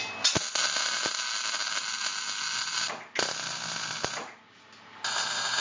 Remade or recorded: recorded